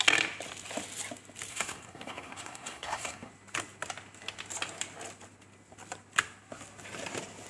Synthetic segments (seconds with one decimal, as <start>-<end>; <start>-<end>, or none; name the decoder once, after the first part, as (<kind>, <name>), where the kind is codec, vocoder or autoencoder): 1.5-3.3 (codec, SNAC)